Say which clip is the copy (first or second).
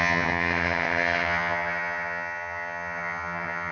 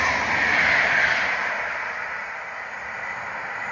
first